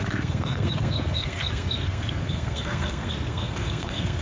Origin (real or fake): fake